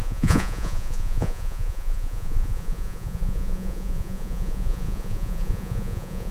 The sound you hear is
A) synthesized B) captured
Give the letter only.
A